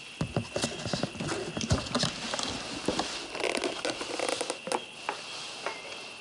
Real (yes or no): yes